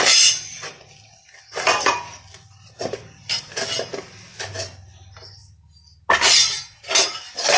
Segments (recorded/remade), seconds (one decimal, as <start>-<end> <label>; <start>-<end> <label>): 0.0-7.6 recorded